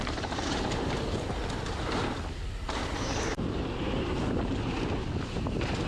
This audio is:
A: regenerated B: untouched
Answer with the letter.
A